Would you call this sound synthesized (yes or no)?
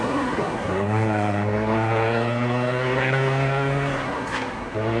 yes